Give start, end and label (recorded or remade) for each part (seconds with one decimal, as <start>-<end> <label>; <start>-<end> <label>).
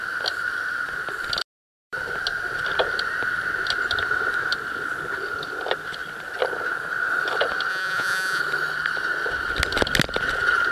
0.0-7.7 recorded; 7.7-8.4 remade; 8.4-10.7 recorded